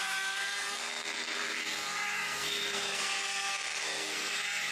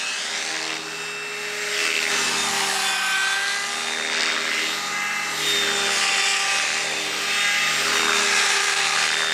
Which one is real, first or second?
second